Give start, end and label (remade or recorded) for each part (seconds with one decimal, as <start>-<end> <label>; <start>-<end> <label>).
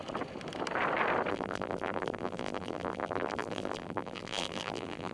0.0-1.3 recorded; 1.3-5.1 remade